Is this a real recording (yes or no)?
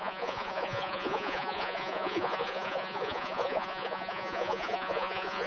no